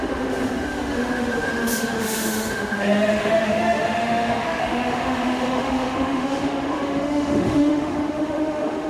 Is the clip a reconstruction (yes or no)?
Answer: yes